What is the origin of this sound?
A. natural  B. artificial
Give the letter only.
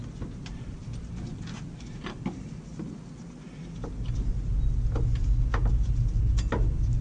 A